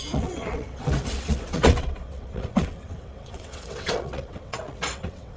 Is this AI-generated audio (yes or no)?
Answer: yes